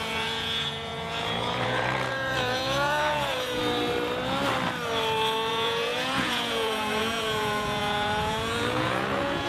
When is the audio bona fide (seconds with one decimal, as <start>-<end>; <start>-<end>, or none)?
3.6-5.5